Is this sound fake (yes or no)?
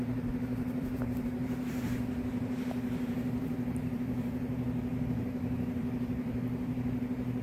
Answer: yes